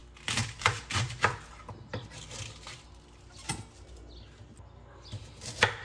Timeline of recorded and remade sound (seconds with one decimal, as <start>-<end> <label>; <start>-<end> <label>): 0.0-5.8 recorded